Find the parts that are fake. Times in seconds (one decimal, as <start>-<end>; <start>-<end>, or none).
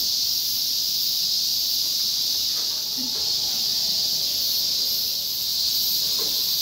none